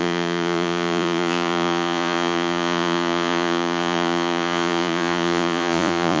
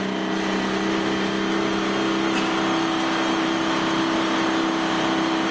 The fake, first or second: first